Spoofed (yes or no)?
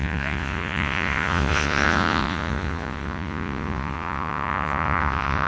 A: yes